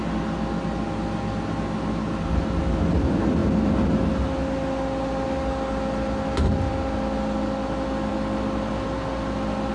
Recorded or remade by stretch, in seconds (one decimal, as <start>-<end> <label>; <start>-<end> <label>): 0.0-9.7 recorded